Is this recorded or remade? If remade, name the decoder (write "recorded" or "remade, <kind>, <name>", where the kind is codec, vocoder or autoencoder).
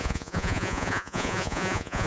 remade, vocoder, Vocos